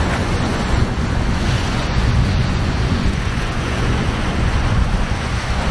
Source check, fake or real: fake